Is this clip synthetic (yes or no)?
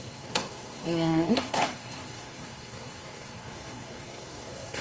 yes